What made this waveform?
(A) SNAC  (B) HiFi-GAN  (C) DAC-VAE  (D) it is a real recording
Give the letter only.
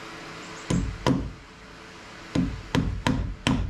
D